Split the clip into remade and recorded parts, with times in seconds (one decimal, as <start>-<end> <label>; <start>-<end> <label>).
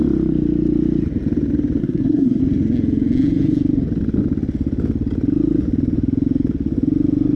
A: 0.0-1.8 recorded; 1.8-2.4 remade; 2.4-7.4 recorded